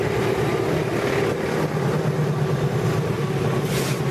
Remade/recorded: recorded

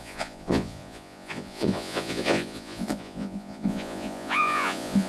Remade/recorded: remade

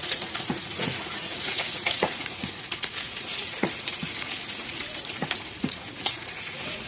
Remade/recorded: remade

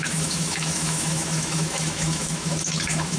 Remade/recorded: remade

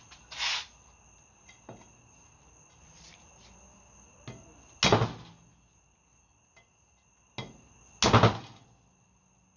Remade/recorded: recorded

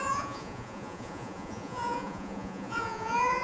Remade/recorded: remade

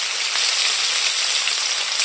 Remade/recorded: recorded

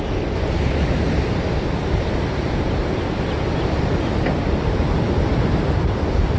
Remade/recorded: recorded